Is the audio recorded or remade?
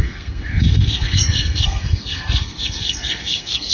remade